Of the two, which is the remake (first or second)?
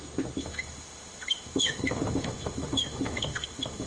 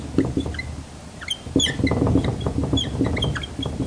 first